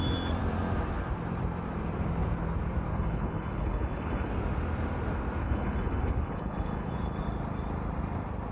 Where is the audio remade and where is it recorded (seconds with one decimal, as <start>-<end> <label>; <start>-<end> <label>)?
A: 0.0-2.9 recorded; 2.9-4.3 remade; 4.3-5.4 recorded; 5.4-7.2 remade; 7.2-8.5 recorded